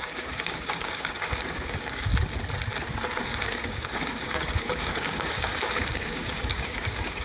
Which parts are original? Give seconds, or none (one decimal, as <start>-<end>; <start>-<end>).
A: 2.1-3.2